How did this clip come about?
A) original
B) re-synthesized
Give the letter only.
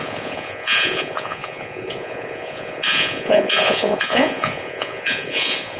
B